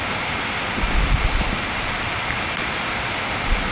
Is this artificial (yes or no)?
yes